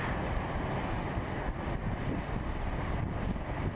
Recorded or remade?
recorded